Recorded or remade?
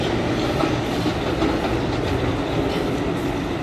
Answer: recorded